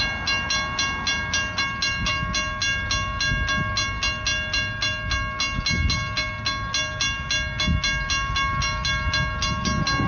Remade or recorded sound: recorded